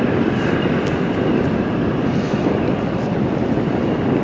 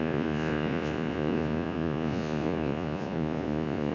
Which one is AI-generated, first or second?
second